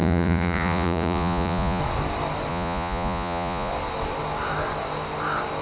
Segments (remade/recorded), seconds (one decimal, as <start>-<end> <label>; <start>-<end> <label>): 0.0-1.8 remade; 1.8-2.5 recorded; 2.5-3.7 remade; 3.7-5.6 recorded